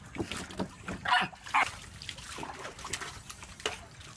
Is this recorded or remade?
recorded